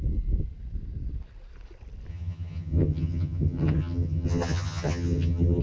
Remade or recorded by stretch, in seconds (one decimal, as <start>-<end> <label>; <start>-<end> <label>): 0.0-2.1 recorded; 2.1-5.6 remade